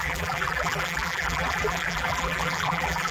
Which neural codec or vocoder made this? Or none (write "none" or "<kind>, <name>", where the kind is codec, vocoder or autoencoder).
vocoder, BigVGAN v2